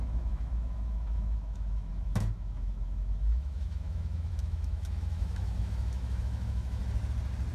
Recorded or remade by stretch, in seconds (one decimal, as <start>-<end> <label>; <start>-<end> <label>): 0.0-6.8 remade; 6.8-7.5 recorded

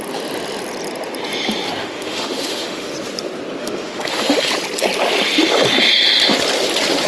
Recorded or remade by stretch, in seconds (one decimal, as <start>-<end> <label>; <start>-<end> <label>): 0.0-1.8 recorded; 1.8-2.9 remade; 2.9-3.6 recorded; 3.6-4.5 remade; 4.5-7.1 recorded